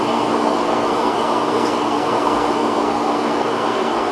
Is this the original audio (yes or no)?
no